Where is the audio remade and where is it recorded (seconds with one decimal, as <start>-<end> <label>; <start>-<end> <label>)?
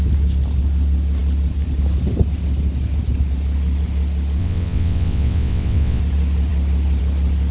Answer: 0.0-4.4 recorded; 4.4-6.0 remade; 6.0-7.5 recorded